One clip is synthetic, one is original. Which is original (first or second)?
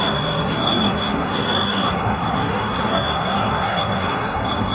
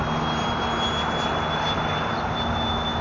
second